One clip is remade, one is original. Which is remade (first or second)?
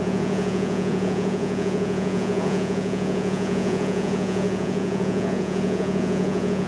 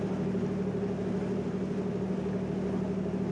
first